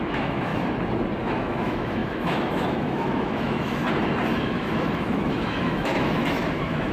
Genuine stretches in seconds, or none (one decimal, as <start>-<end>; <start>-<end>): 0.5-1.2; 3.8-4.4